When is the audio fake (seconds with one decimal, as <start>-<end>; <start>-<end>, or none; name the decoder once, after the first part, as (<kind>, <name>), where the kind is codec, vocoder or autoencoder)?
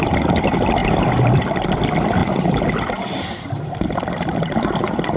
none